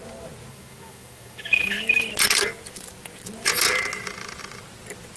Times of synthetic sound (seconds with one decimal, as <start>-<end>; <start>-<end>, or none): 0.5-2.0